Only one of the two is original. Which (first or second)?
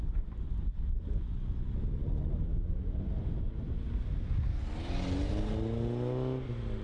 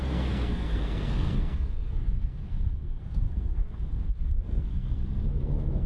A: first